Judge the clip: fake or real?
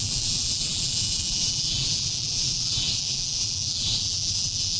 fake